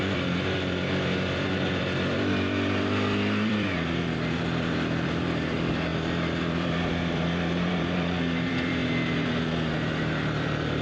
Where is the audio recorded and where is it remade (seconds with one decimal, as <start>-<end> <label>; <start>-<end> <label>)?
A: 0.0-5.9 remade; 5.9-6.4 recorded; 6.4-8.8 remade; 8.8-10.0 recorded; 10.0-10.8 remade